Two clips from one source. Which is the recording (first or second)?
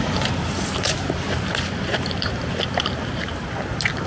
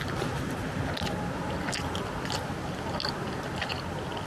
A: second